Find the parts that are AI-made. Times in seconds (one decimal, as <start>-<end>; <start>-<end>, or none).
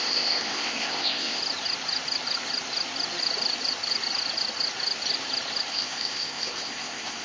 0.0-1.4; 5.7-7.2